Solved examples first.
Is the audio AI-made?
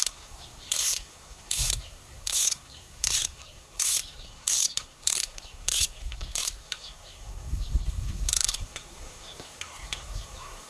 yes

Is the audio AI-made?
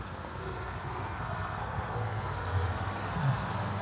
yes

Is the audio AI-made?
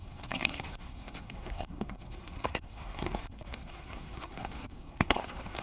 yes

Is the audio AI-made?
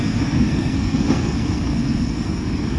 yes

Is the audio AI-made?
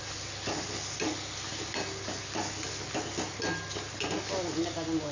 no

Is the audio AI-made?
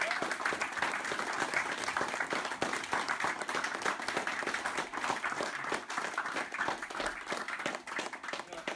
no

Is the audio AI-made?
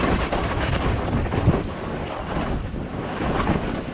no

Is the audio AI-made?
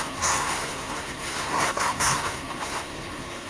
yes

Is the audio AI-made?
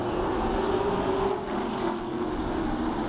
no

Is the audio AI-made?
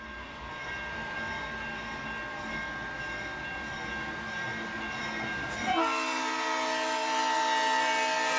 no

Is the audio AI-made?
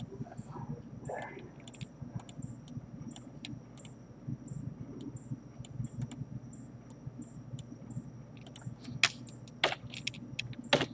no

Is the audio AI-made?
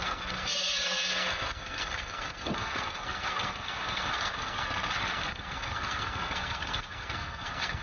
yes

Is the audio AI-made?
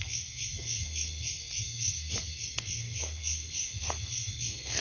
yes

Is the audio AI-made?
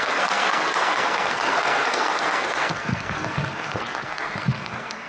yes